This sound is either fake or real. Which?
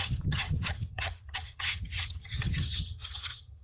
fake